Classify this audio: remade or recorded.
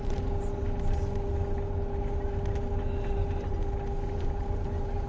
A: recorded